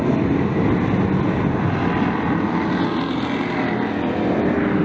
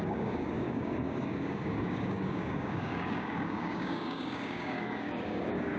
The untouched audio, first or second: first